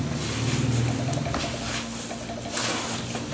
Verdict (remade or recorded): recorded